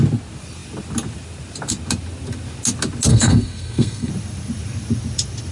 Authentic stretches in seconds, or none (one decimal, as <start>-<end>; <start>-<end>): 0.0-3.1; 4.1-5.5